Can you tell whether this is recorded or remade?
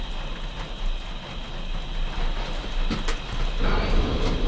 recorded